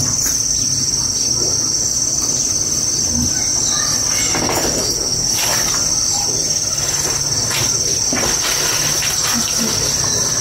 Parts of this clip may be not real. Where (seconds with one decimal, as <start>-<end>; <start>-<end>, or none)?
none